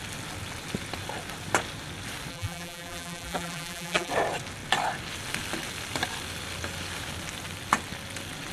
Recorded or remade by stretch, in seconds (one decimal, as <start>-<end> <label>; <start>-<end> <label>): 0.0-2.3 recorded; 2.3-4.1 remade; 4.1-8.5 recorded